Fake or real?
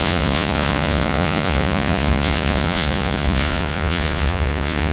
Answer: fake